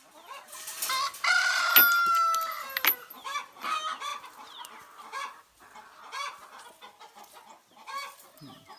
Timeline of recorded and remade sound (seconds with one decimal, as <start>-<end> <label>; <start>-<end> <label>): 0.0-8.8 recorded